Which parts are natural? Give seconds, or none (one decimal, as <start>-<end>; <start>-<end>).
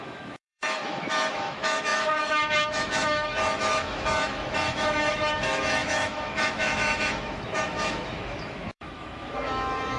none